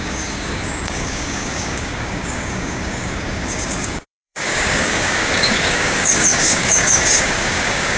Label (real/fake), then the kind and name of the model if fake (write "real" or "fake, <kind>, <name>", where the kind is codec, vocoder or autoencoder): fake, codec, DAC